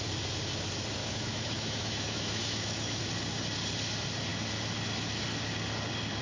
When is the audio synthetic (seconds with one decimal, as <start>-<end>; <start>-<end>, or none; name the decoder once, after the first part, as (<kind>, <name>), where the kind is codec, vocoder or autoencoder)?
1.0-3.0 (autoencoder, DAC-VAE)